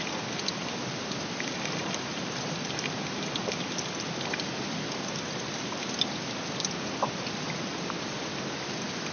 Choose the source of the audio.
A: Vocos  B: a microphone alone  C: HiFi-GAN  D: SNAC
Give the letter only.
B